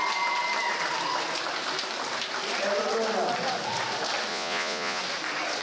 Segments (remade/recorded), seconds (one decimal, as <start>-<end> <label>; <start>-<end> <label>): 0.0-4.3 recorded; 4.3-5.0 remade; 5.0-5.6 recorded